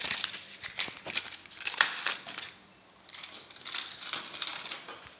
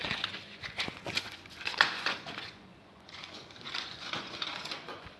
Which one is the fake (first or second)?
second